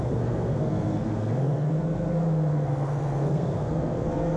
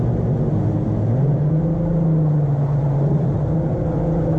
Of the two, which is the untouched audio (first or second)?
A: second